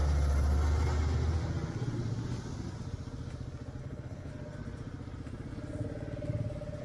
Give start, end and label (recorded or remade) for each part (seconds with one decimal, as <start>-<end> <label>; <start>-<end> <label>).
0.0-3.8 recorded; 3.8-4.3 remade; 4.3-6.8 recorded